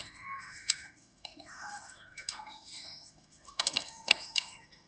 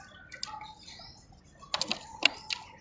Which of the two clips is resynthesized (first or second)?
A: first